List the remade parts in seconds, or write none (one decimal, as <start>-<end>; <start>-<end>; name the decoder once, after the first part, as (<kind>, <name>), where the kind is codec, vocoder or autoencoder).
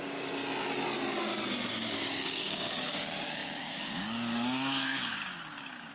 0.0-0.4 (codec, DAC); 1.7-5.9